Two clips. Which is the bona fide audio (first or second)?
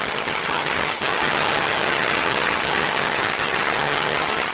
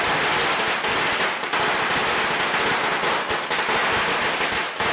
second